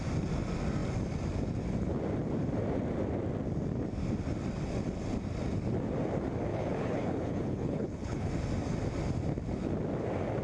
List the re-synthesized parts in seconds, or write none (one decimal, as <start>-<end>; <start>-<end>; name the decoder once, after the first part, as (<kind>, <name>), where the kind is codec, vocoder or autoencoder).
6.5-8.3 (codec, HILCodec)